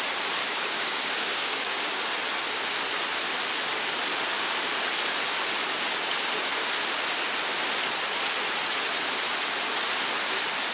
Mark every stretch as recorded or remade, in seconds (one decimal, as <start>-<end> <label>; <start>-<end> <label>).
0.0-0.4 recorded; 0.4-2.1 remade; 2.1-10.7 recorded